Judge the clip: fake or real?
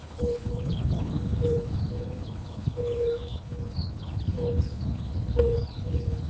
fake